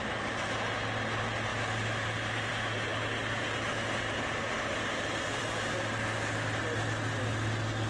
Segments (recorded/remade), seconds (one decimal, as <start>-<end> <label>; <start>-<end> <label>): 0.0-7.9 recorded